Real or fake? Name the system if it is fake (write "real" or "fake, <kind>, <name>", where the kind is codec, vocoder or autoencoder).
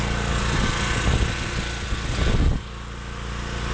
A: real